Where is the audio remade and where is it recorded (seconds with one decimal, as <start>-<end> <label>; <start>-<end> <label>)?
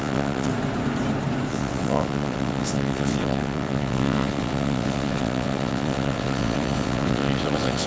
0.0-0.5 remade; 0.5-1.5 recorded; 1.5-7.9 remade